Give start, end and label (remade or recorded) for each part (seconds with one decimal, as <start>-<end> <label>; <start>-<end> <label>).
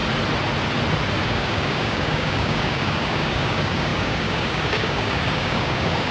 0.0-1.2 recorded; 1.2-6.1 remade